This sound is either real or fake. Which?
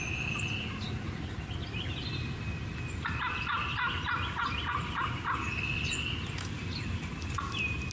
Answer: real